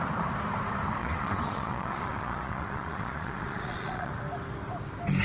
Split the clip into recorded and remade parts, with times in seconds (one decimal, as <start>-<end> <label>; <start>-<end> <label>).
0.0-1.0 recorded; 1.0-4.1 remade; 4.1-5.2 recorded